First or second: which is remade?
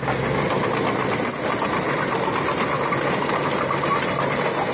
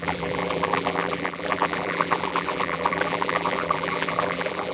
second